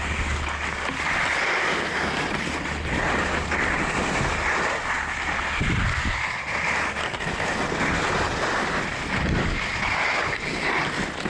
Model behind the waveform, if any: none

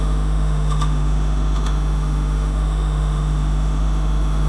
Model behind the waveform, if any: autoencoder, DAC-VAE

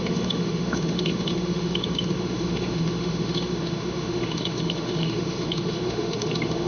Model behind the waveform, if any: autoencoder, DAC-VAE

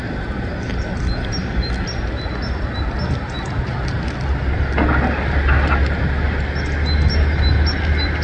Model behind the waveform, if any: none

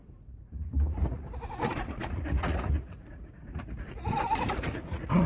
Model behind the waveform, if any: vocoder, Vocos